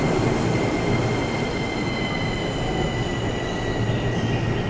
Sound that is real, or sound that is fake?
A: real